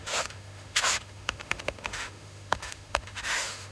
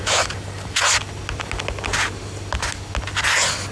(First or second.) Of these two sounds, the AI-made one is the first